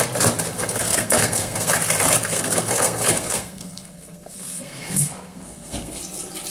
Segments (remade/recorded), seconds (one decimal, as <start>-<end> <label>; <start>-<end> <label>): 0.0-0.5 recorded; 0.5-1.7 remade; 1.7-2.2 recorded; 2.2-6.0 remade; 6.0-6.5 recorded